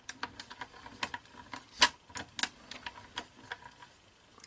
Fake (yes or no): no